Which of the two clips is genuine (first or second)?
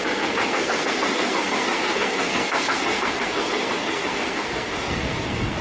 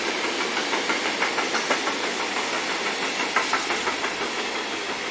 second